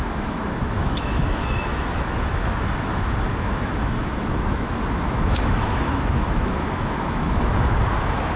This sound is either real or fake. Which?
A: fake